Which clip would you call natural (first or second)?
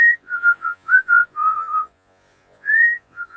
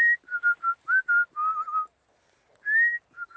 second